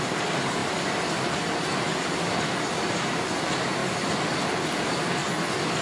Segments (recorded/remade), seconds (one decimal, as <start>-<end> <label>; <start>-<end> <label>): 0.0-3.8 remade; 3.8-4.8 recorded; 4.8-5.2 remade; 5.2-5.8 recorded